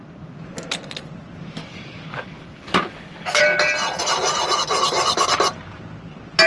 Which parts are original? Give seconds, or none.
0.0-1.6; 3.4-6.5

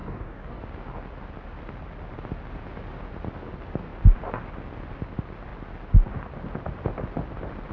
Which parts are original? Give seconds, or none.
0.6-7.7

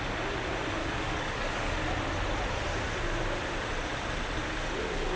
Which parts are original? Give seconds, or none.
0.0-0.8; 1.7-5.2

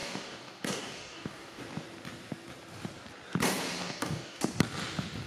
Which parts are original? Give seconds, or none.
1.6-3.8; 4.4-5.3